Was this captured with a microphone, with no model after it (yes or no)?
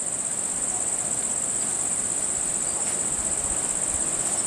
yes